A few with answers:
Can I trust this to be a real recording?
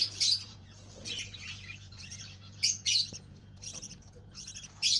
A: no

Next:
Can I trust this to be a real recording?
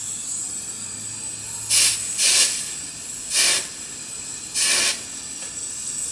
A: yes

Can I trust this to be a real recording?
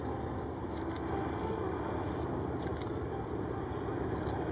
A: yes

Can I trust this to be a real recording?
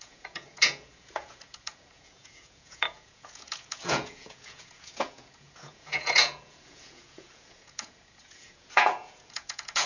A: no